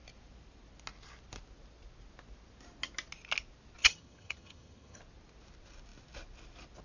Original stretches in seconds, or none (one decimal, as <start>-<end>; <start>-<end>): 0.0-3.8; 5.0-6.8